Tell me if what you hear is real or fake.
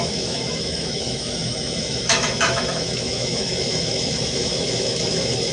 fake